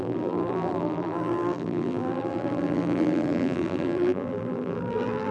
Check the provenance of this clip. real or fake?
fake